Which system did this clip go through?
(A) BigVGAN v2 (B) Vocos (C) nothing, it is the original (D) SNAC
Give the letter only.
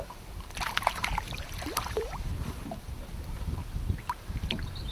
A